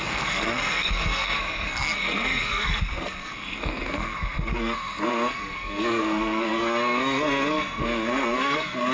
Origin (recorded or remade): remade